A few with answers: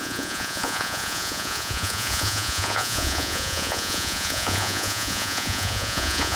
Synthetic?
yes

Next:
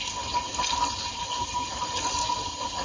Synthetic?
no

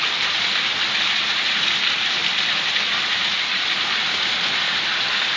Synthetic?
no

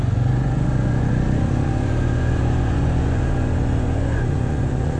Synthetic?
yes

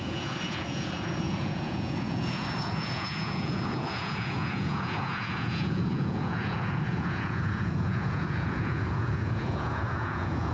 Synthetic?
yes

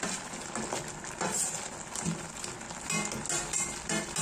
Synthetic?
no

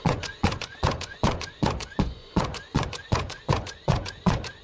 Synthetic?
yes